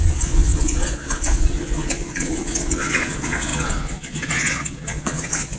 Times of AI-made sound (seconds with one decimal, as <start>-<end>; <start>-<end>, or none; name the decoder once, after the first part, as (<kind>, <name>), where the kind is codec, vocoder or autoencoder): 0.0-5.6 (vocoder, Vocos)